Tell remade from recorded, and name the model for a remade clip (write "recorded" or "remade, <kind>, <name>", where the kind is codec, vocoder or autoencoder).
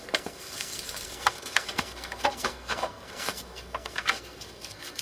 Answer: remade, codec, SNAC